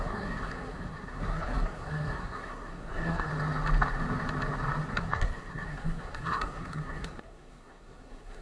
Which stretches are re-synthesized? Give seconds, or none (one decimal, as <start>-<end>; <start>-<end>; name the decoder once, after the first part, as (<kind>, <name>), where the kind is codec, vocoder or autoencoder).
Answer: 0.0-3.3 (codec, SNAC); 4.9-8.4